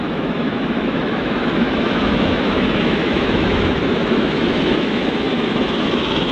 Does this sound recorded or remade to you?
remade